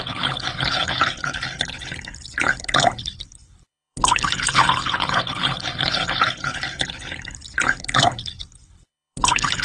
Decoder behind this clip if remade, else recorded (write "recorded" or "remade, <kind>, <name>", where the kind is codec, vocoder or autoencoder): remade, codec, HILCodec